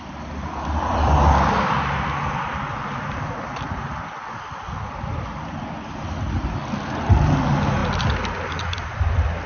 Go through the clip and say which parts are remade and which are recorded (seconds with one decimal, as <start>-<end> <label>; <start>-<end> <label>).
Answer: 0.0-7.8 remade; 7.8-8.4 recorded; 8.4-9.5 remade